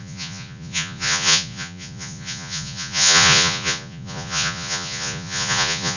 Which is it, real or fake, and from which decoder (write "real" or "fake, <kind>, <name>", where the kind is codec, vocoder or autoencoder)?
fake, vocoder, Vocos